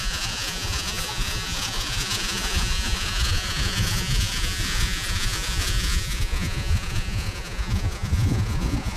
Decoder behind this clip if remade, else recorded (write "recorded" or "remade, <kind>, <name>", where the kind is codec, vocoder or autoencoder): remade, vocoder, Vocos